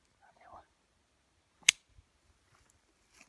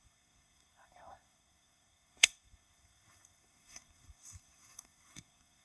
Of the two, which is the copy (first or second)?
second